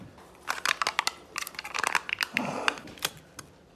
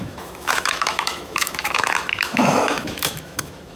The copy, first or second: second